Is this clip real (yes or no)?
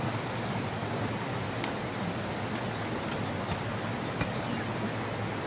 yes